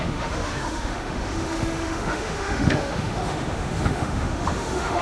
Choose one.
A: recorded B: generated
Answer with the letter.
B